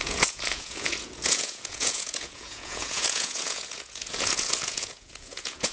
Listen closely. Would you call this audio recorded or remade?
remade